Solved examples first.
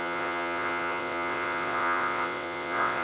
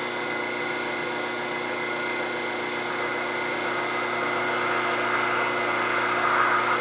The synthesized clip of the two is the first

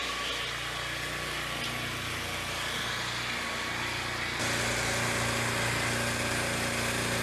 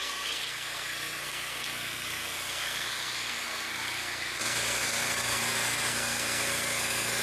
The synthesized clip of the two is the second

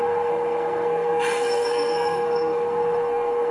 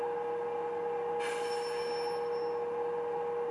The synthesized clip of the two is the first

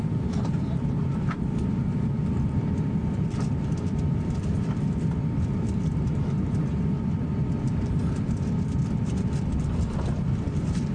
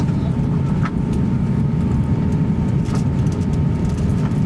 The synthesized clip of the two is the first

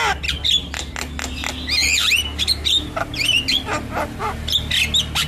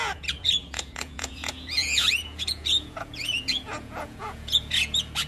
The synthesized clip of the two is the second